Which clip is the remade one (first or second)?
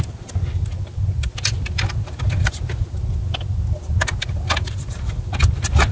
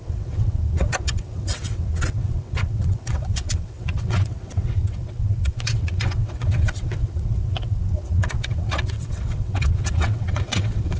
second